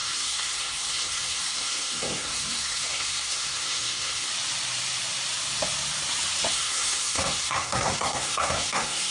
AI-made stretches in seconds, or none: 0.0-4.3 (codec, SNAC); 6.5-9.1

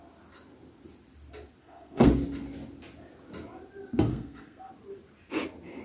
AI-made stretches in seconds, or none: 1.6-2.1 (codec, SNAC); 4.1-4.7

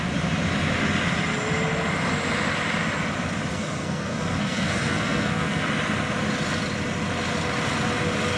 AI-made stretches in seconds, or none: 3.5-5.7 (codec, SNAC)

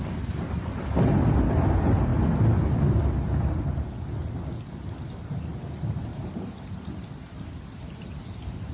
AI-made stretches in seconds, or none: none

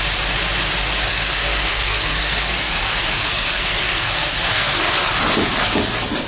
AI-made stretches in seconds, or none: 1.1-4.9 (codec, SNAC)